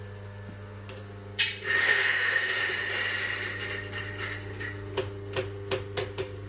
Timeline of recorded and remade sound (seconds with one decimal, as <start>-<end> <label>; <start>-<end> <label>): 0.0-1.8 recorded; 1.8-2.6 remade; 2.6-6.5 recorded